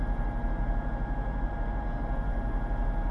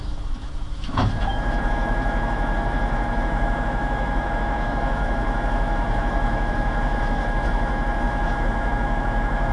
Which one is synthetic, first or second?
second